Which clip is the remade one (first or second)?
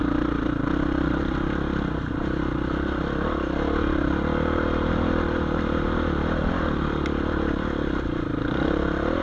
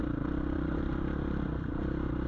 second